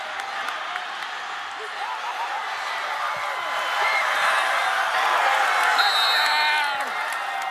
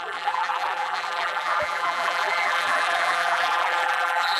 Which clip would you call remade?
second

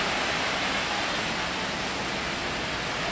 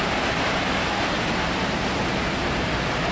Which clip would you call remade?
second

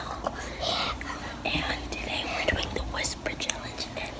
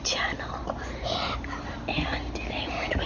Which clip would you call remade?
first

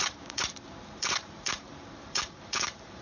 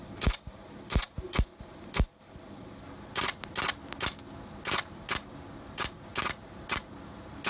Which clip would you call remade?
first